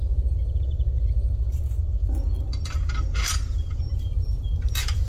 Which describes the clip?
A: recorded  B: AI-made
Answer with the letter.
B